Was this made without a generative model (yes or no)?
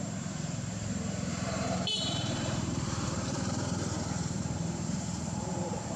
no